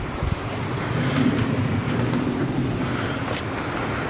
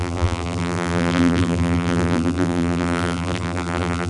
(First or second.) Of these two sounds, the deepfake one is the second